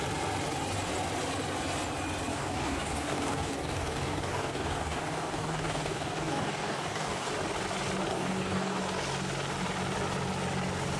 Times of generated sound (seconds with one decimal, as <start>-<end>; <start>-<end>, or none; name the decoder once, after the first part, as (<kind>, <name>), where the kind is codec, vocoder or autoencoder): 2.3-7.3 (codec, DAC); 8.1-8.8